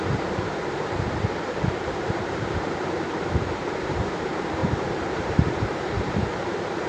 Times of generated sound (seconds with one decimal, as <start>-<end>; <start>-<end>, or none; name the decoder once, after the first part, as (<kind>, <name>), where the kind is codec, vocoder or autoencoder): 0.0-6.9 (vocoder, BigVGAN v2)